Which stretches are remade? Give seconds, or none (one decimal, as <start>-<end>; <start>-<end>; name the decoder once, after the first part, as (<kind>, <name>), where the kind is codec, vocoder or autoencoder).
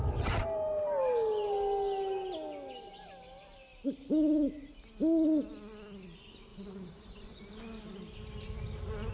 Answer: 6.5-7.4 (vocoder, Vocos)